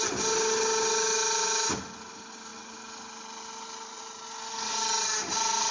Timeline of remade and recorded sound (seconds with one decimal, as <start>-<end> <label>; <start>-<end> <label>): 0.0-0.9 recorded; 0.9-1.7 remade; 1.7-5.7 recorded